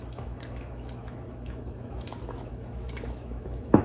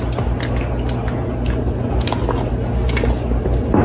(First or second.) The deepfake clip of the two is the first